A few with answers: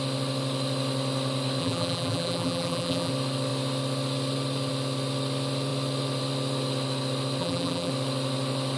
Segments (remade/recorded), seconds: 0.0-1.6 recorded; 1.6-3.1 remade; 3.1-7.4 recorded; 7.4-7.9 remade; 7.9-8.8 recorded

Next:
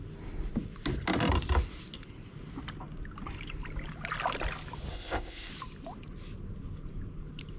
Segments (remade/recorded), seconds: 0.0-4.9 recorded; 4.9-5.5 remade; 5.5-7.6 recorded